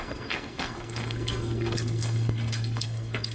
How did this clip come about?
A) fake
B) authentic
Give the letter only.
A